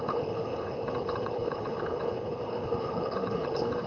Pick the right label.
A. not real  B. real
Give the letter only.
A